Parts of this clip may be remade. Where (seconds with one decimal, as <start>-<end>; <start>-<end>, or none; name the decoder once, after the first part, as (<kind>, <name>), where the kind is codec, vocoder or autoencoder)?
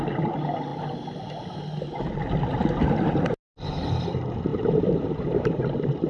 4.5-6.1 (vocoder, BigVGAN v2)